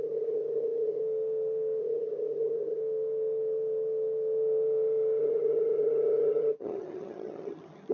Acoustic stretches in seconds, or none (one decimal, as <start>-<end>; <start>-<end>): 1.0-1.8; 2.8-5.2